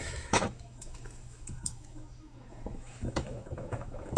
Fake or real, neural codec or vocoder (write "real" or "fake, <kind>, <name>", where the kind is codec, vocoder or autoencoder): fake, autoencoder, DAC-VAE